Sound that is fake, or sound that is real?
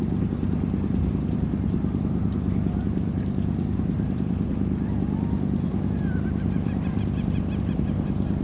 fake